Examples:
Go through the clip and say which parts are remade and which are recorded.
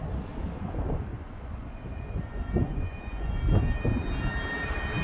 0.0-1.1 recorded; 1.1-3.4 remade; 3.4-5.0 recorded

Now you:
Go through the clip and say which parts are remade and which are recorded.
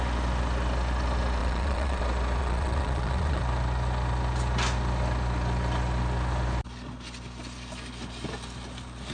0.0-1.4 recorded; 1.4-2.0 remade; 2.0-2.4 recorded; 2.4-3.4 remade; 3.4-9.1 recorded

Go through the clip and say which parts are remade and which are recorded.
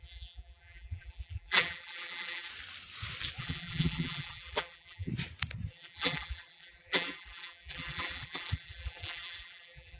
0.0-2.5 remade; 2.5-3.4 recorded; 3.4-5.1 remade; 5.1-5.7 recorded; 5.7-10.0 remade